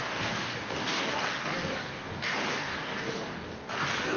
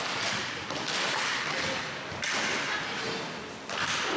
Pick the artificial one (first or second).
first